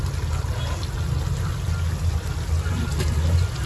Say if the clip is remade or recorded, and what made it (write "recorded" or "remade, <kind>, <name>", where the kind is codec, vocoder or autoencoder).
recorded